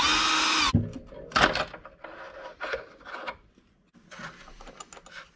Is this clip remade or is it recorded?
recorded